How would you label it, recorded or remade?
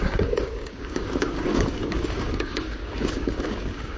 remade